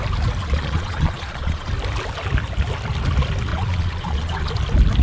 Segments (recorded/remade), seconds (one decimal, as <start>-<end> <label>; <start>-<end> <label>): 0.0-0.4 recorded; 0.4-1.7 remade; 1.7-3.5 recorded; 3.5-4.5 remade; 4.5-5.0 recorded